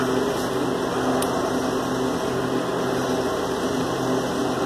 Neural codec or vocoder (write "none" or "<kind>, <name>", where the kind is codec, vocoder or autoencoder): none